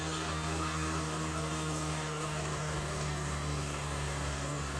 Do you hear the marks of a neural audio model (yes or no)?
yes